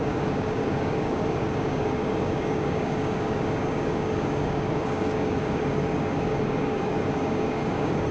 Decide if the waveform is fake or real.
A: fake